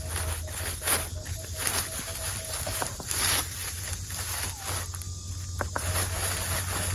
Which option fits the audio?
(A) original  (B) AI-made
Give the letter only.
A